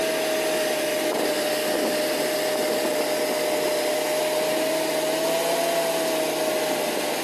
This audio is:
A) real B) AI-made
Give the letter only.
A